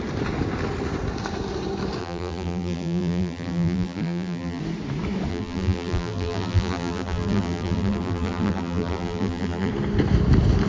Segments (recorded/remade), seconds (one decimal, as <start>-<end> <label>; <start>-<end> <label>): 0.0-2.0 recorded; 2.0-4.6 remade; 4.6-5.3 recorded; 5.3-9.7 remade; 9.7-10.7 recorded